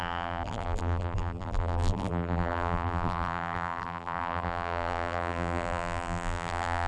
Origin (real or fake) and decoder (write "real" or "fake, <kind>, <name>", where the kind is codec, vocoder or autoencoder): fake, vocoder, BigVGAN v2